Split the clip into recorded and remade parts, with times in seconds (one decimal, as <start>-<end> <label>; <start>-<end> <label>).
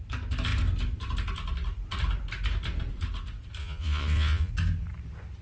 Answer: 0.0-3.6 recorded; 3.6-4.5 remade; 4.5-5.4 recorded